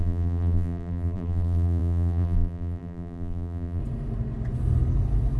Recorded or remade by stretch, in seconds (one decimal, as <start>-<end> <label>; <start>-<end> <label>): 0.0-3.8 remade; 3.8-5.4 recorded